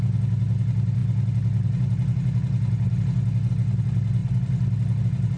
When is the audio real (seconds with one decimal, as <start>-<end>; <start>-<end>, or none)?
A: 0.0-5.4